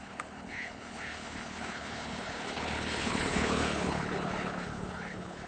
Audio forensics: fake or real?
fake